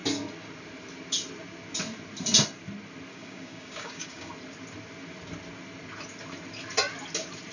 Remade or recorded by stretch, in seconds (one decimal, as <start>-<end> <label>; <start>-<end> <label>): 0.0-3.1 recorded; 3.1-4.3 remade; 4.3-7.5 recorded